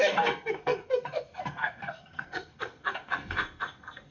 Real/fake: fake